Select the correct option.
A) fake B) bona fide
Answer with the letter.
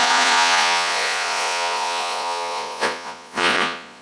A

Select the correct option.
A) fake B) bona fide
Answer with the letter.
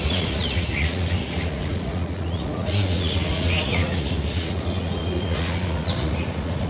A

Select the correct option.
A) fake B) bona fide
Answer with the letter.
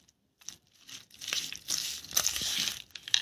B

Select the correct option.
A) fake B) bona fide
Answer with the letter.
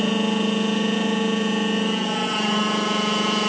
A